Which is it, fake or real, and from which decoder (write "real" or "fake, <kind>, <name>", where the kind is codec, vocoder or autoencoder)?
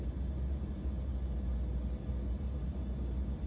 real